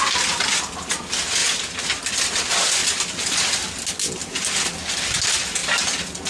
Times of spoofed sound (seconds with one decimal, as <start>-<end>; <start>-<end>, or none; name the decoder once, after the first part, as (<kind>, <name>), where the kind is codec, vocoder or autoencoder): none